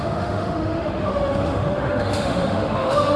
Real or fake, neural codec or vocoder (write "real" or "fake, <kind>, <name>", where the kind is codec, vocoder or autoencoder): fake, autoencoder, DAC-VAE